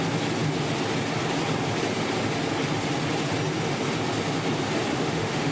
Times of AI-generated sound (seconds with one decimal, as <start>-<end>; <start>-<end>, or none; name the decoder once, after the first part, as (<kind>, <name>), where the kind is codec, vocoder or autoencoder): 4.9-5.5 (autoencoder, DAC-VAE)